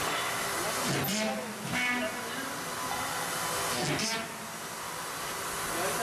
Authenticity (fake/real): real